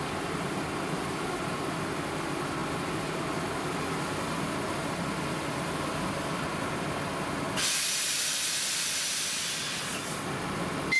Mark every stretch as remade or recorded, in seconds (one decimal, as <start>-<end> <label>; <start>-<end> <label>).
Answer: 0.0-11.0 recorded